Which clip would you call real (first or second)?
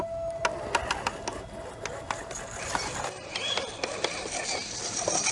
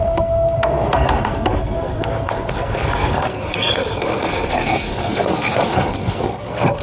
first